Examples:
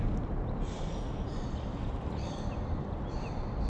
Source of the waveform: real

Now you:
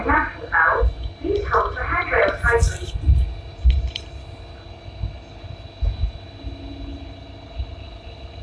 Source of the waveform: real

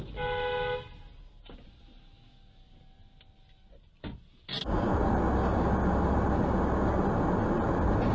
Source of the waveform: real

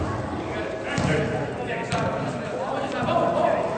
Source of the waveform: real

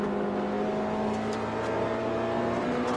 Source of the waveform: real